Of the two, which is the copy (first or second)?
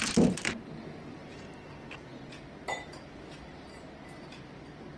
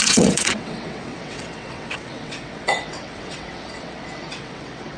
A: second